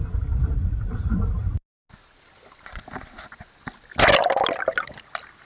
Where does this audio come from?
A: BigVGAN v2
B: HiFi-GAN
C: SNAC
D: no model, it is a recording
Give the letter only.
D